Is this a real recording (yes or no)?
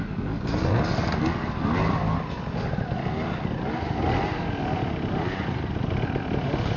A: yes